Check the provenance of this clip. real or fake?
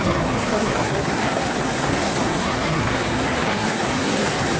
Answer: fake